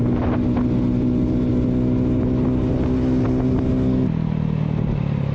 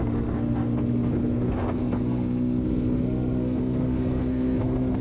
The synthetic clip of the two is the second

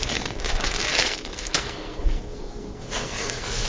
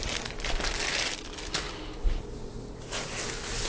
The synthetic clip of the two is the first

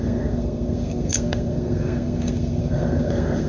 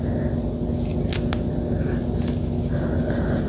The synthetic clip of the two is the first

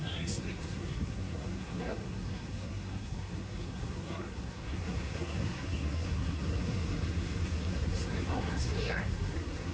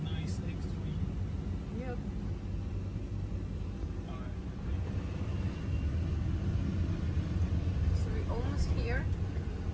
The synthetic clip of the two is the first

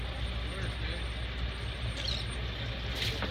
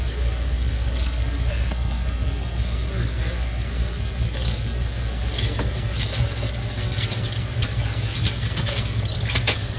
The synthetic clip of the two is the second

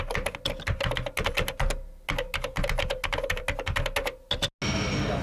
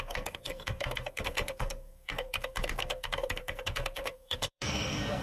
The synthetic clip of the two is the second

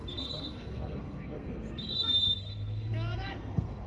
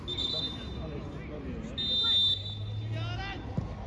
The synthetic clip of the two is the first